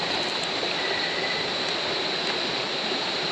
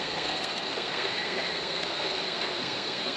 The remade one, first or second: second